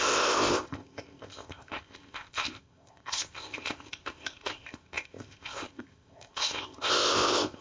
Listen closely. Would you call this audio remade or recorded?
remade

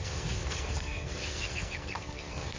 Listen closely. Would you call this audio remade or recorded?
remade